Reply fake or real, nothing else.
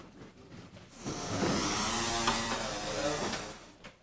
fake